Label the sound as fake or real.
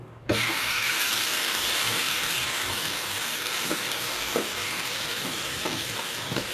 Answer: fake